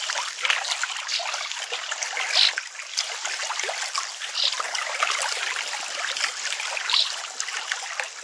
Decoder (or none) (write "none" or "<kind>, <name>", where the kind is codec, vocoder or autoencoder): none